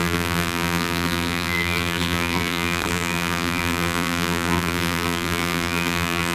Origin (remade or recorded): remade